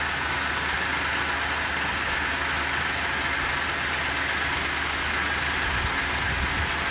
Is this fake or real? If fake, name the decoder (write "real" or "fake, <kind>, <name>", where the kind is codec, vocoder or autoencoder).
real